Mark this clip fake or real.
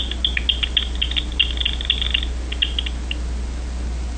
real